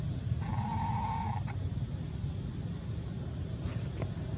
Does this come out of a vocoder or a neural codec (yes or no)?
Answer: no